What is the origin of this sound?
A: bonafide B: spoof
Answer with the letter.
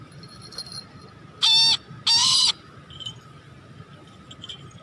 A